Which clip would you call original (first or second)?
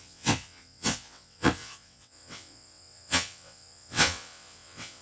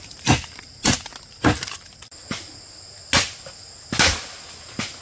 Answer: second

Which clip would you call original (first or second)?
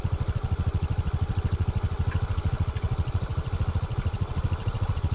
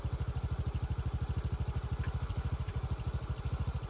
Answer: second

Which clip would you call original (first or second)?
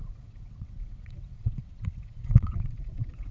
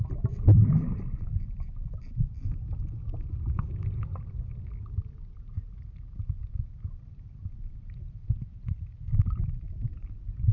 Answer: second